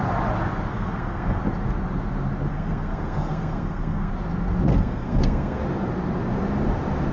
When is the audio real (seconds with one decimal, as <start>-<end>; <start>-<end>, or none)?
0.0-0.7; 1.4-2.5; 4.1-4.7; 5.6-7.1